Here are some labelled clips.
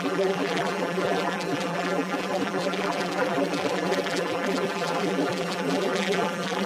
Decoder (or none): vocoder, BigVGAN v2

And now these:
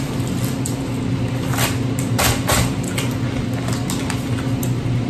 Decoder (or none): none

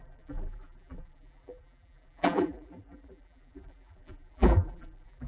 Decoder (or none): vocoder, BigVGAN v2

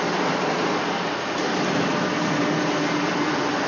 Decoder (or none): vocoder, BigVGAN v2